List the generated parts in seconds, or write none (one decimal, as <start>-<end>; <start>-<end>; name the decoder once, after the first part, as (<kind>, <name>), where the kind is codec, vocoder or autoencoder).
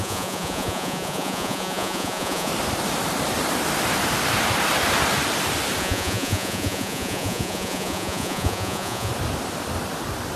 0.0-2.5 (vocoder, Vocos); 5.8-9.1